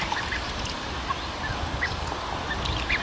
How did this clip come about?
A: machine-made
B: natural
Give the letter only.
B